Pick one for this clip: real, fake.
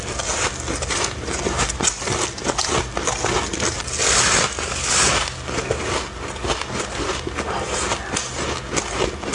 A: real